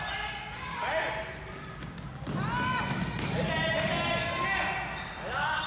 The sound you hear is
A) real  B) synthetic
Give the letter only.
A